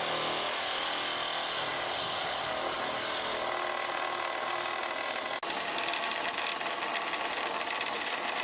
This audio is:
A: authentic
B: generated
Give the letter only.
A